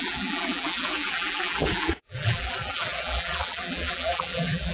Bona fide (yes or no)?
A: no